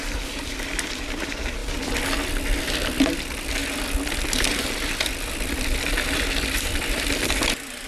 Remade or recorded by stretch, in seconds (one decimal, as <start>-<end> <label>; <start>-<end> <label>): 0.0-1.6 remade; 1.6-2.6 recorded; 2.6-3.6 remade; 3.6-4.8 recorded; 4.8-7.9 remade